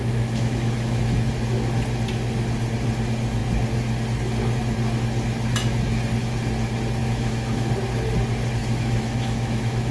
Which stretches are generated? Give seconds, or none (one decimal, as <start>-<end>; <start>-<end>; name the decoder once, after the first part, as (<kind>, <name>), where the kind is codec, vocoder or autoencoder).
0.0-1.3 (autoencoder, DAC-VAE); 7.0-7.7; 8.6-9.9